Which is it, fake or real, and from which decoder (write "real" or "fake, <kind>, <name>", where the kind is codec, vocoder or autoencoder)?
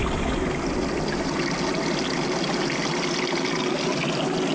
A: real